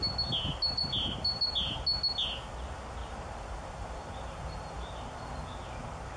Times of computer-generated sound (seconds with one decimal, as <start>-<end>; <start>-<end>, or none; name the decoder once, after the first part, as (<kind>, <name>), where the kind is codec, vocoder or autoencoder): 3.0-5.4 (vocoder, BigVGAN v2)